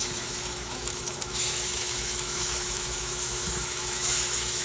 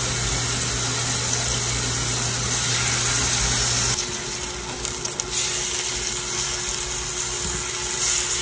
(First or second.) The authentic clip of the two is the second